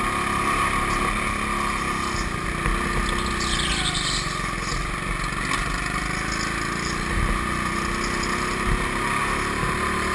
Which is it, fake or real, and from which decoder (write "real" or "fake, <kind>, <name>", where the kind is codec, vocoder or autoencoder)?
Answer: real